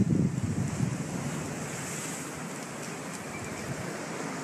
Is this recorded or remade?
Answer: recorded